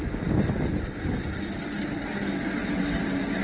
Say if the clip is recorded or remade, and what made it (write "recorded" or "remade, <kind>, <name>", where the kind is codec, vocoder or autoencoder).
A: recorded